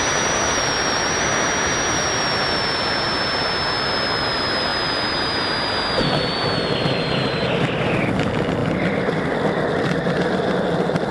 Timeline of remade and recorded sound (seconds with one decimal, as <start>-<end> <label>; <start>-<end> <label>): 0.0-11.1 recorded

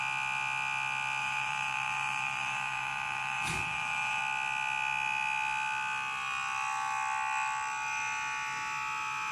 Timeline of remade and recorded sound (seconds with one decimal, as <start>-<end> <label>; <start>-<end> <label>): 0.0-1.2 recorded; 1.2-4.2 remade; 4.2-9.3 recorded

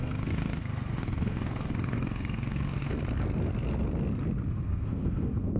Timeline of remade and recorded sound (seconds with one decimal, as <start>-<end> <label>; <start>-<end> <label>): 0.0-3.0 remade; 3.0-4.5 recorded; 4.5-5.6 remade